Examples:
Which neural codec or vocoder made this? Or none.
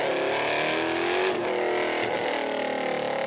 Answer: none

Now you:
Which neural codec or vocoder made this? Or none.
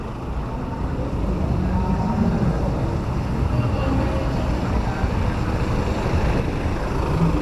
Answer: none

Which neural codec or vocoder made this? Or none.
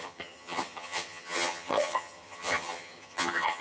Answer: vocoder, HiFi-GAN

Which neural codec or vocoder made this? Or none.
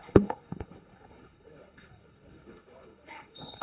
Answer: codec, HILCodec